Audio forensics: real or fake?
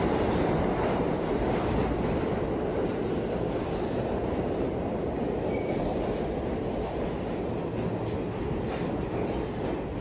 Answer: real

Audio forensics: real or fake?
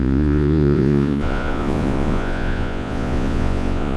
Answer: fake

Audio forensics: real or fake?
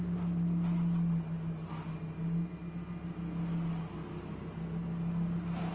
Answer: real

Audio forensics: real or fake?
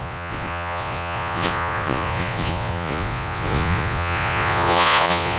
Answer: fake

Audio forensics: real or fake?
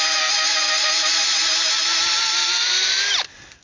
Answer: real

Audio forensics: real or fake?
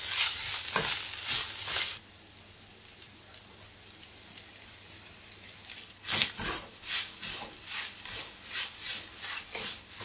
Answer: real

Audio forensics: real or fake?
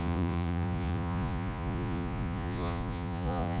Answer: fake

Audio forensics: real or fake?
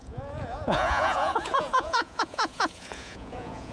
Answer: fake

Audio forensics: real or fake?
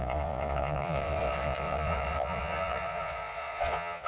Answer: fake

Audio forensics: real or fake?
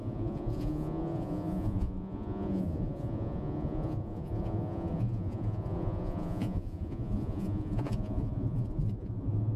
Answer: fake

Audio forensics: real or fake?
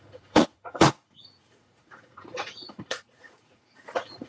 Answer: fake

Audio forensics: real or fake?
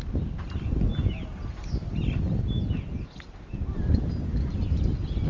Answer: real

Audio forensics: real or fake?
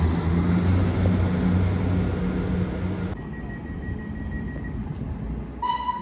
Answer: real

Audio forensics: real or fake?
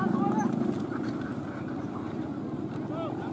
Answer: real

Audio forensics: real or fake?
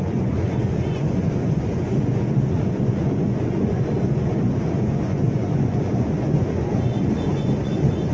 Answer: fake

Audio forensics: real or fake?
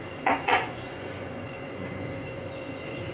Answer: fake